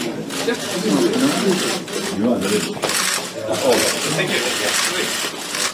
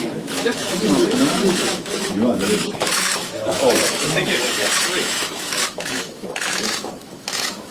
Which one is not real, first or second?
second